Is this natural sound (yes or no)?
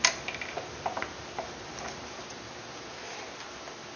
yes